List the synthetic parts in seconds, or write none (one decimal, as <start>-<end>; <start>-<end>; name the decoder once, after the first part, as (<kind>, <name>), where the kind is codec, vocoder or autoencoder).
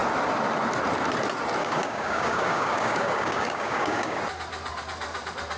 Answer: 1.6-4.2 (codec, DAC)